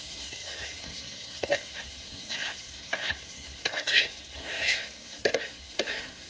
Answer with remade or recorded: remade